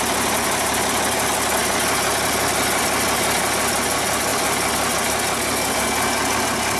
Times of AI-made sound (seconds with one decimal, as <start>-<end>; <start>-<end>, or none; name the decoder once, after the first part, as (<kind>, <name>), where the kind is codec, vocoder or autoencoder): none